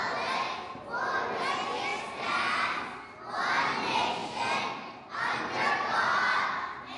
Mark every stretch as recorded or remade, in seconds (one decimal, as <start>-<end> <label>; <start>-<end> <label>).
0.0-7.0 recorded